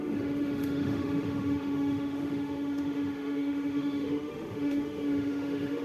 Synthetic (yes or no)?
yes